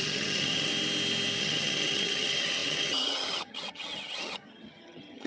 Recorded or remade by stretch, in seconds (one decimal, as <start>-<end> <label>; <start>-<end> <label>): 0.0-0.7 remade; 0.7-1.4 recorded; 1.4-5.3 remade